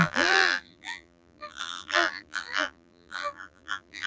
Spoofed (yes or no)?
yes